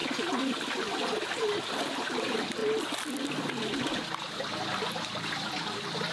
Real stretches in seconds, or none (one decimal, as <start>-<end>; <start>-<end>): 0.0-6.1